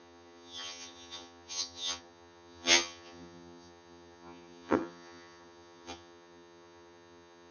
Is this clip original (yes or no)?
no